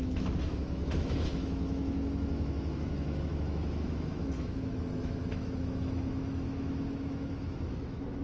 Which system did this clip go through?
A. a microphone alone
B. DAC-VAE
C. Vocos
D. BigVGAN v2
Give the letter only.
B